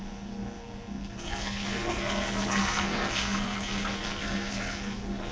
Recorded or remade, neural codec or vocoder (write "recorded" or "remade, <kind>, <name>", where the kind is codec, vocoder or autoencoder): remade, codec, SNAC